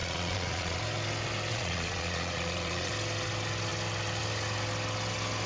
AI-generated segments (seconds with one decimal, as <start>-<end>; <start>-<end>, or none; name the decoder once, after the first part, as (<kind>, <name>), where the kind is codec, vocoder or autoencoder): 0.0-0.8 (vocoder, Vocos); 1.5-2.9